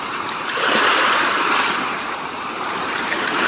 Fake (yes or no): yes